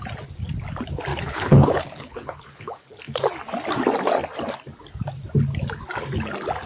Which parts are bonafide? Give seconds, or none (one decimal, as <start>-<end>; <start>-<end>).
0.0-1.1; 3.0-6.7